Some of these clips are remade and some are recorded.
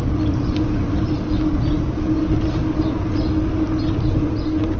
recorded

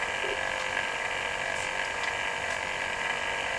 recorded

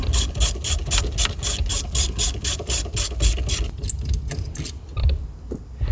recorded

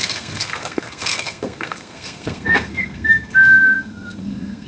remade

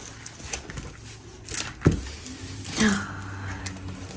recorded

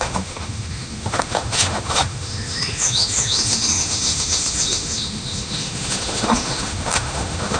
remade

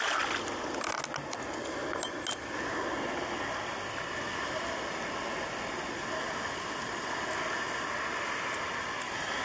recorded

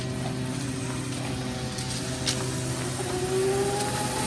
recorded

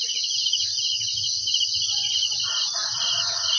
recorded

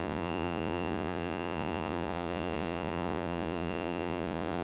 remade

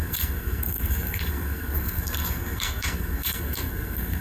remade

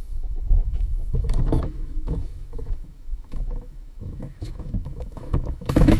remade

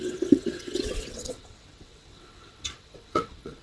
remade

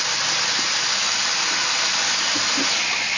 recorded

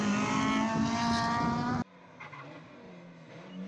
recorded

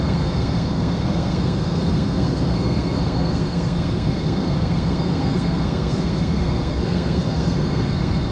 remade